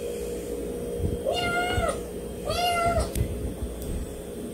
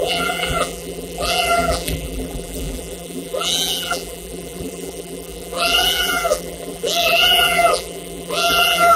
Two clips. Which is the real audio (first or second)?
first